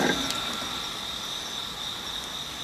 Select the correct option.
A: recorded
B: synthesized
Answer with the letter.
A